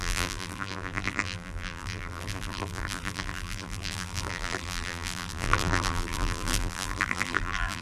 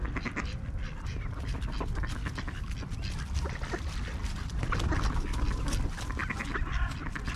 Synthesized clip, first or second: first